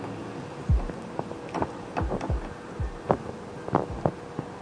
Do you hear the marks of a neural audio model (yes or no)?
no